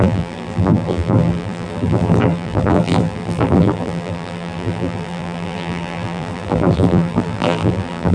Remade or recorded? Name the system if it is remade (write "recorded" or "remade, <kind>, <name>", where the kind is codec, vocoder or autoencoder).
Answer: remade, vocoder, BigVGAN v2